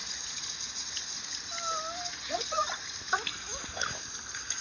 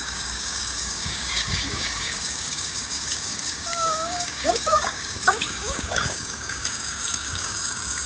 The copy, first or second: second